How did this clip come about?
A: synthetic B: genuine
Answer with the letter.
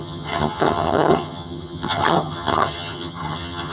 A